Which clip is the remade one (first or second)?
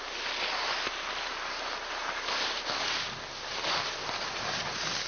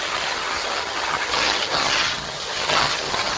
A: second